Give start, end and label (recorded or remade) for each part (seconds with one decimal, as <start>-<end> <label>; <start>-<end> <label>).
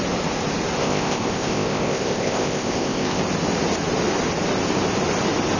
0.0-0.8 recorded; 0.8-3.2 remade; 3.2-5.6 recorded